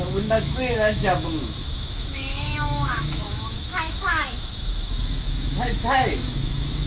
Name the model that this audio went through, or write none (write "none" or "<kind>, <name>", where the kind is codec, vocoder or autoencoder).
autoencoder, DAC-VAE